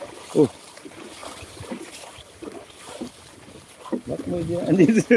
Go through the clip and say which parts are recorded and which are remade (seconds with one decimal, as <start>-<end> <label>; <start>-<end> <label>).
0.0-1.2 recorded; 1.2-3.1 remade; 3.1-5.2 recorded